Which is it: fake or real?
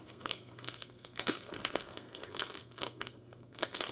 fake